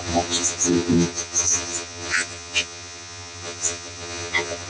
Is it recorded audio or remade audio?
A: remade